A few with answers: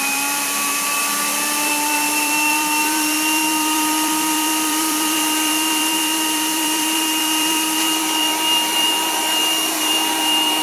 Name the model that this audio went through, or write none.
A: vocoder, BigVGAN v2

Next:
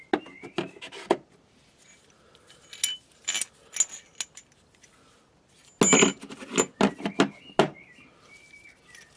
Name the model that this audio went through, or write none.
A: none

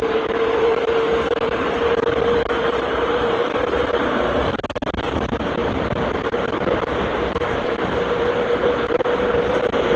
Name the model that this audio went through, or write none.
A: vocoder, BigVGAN v2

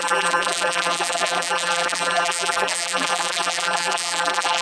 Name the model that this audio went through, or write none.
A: vocoder, BigVGAN v2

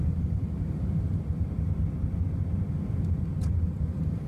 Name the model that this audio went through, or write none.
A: none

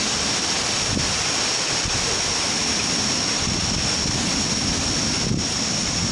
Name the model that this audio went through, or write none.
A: none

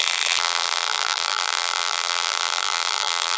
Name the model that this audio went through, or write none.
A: vocoder, BigVGAN v2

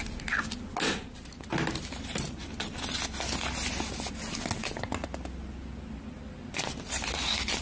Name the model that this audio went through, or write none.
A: none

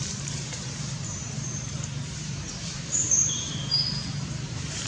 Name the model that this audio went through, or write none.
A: vocoder, BigVGAN v2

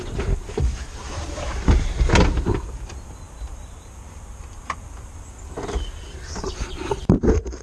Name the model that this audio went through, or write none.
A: vocoder, BigVGAN v2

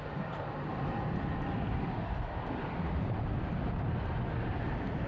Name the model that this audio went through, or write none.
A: none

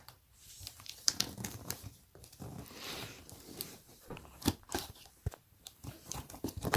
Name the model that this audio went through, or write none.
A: vocoder, BigVGAN v2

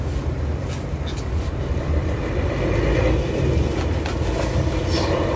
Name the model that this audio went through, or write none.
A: none